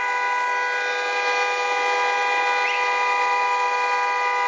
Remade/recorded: recorded